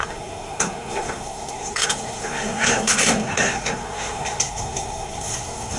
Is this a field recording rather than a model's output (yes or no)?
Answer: no